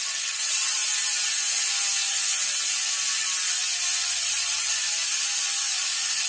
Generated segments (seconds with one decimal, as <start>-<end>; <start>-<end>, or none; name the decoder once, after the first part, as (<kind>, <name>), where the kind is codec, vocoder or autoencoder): 0.0-0.8 (vocoder, Vocos); 4.1-4.7; 5.6-6.3